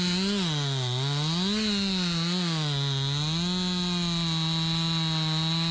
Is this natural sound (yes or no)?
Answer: yes